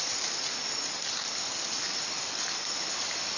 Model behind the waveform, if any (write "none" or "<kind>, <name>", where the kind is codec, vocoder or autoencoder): vocoder, BigVGAN v2